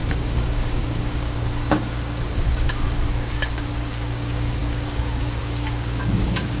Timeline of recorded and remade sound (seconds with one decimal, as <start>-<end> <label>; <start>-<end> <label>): 0.0-6.6 remade